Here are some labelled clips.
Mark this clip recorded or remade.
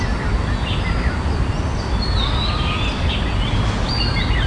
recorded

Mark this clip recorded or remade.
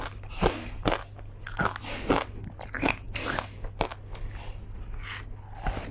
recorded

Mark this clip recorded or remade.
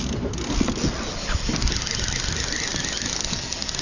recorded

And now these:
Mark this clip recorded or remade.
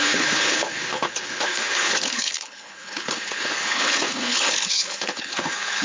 remade